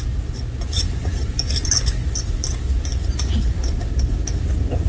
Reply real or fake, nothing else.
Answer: real